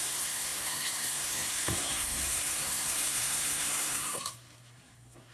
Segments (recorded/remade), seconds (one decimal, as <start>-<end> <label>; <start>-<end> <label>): 0.0-5.3 remade